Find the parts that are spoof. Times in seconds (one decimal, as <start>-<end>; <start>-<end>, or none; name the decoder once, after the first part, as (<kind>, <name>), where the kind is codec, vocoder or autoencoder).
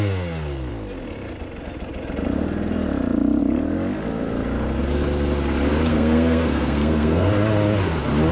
5.9-7.3 (codec, SNAC)